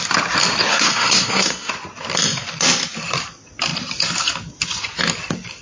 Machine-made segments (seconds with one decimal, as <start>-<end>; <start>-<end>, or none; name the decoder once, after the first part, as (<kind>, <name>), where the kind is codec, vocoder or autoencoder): 0.7-1.7 (codec, SNAC)